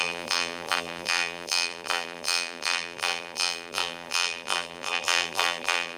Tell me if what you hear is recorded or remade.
remade